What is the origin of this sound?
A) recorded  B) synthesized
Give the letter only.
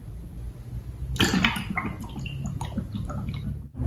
A